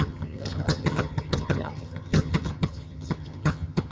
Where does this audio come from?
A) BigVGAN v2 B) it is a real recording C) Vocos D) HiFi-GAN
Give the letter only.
D